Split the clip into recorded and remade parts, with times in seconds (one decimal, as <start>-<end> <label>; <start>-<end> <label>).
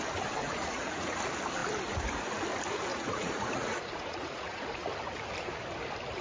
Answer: 0.0-0.4 recorded; 0.4-1.2 remade; 1.2-2.9 recorded; 2.9-4.9 remade; 4.9-6.2 recorded